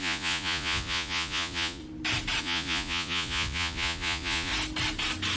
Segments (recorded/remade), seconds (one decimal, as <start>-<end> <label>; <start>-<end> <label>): 0.0-1.8 remade; 1.8-2.4 recorded; 2.4-4.5 remade; 4.5-5.4 recorded